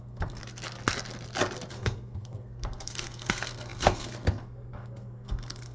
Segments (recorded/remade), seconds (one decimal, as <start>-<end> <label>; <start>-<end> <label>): 0.0-0.4 remade; 0.4-1.7 recorded; 1.7-5.7 remade